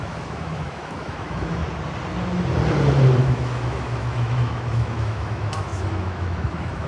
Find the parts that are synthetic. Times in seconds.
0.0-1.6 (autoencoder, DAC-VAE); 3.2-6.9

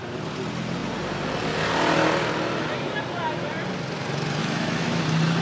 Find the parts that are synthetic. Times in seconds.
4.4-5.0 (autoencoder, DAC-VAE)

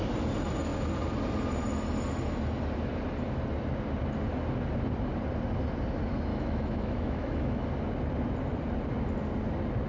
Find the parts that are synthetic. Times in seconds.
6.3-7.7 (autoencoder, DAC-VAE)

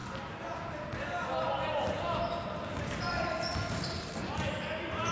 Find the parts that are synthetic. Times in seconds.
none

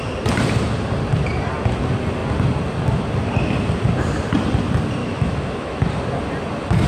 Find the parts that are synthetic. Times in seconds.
5.0-5.8 (autoencoder, DAC-VAE)

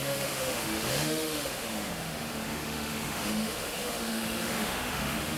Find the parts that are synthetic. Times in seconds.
0.0-5.4 (autoencoder, DAC-VAE)

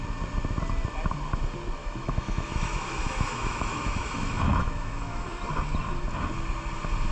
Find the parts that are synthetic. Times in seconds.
1.8-5.3 (autoencoder, DAC-VAE)